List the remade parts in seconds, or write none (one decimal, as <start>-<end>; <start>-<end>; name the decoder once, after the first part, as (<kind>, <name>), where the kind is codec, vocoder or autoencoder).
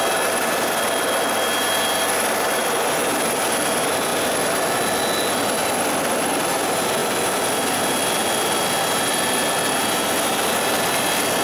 none